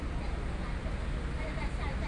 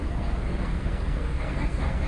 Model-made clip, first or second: second